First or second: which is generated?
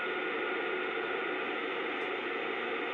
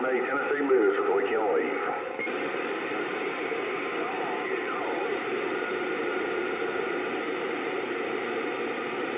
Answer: second